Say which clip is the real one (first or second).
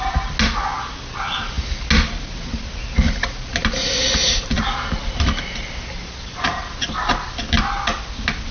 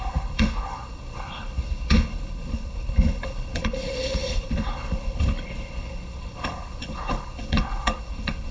first